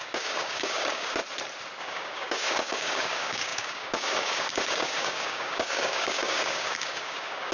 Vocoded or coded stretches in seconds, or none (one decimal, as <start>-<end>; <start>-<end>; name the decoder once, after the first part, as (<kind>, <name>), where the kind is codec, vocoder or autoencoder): 0.0-1.2 (codec, DAC); 1.8-7.5